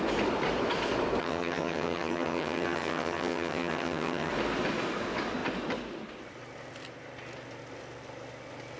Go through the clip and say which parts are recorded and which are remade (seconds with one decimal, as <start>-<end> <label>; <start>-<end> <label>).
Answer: 0.0-1.2 recorded; 1.2-4.3 remade; 4.3-8.8 recorded